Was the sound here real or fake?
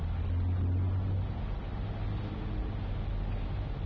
real